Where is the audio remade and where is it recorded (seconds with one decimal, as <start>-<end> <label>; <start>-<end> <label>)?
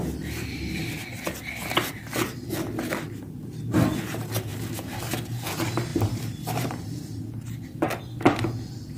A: 0.0-4.5 recorded; 4.5-5.3 remade; 5.3-5.9 recorded; 5.9-7.2 remade; 7.2-9.0 recorded